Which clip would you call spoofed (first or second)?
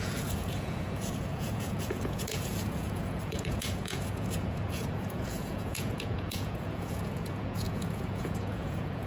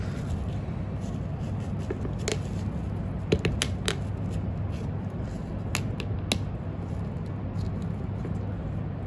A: first